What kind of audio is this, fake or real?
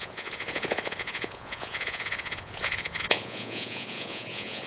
fake